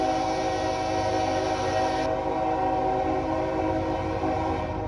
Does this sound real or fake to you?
real